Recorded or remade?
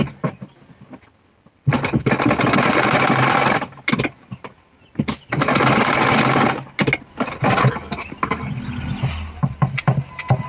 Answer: recorded